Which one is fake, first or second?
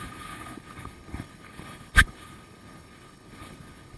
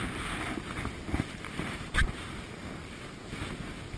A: first